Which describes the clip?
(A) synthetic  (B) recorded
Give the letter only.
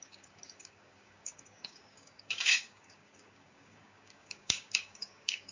A